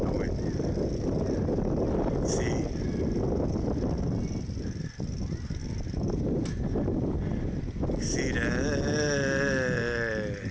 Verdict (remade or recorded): recorded